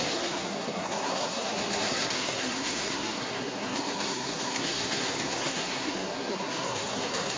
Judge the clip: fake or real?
fake